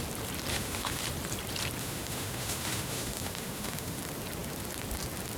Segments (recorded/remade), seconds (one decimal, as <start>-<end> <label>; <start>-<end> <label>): 0.0-0.5 recorded; 0.5-1.0 remade; 1.0-1.8 recorded; 1.8-4.0 remade; 4.0-5.4 recorded